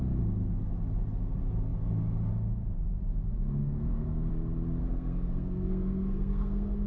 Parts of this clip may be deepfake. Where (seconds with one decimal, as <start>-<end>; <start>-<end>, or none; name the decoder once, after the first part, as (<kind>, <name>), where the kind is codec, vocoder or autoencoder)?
3.6-4.3 (codec, SNAC); 4.8-6.9